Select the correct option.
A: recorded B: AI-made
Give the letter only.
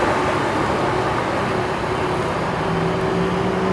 A